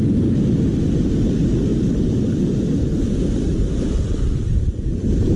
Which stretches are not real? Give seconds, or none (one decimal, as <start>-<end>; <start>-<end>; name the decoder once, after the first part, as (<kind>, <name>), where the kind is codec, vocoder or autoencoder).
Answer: none